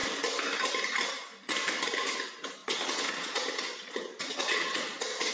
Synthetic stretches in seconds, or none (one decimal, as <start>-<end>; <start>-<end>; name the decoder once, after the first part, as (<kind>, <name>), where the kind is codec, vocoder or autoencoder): 2.6-5.3 (vocoder, Vocos)